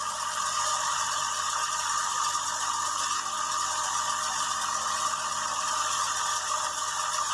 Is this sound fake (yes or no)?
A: no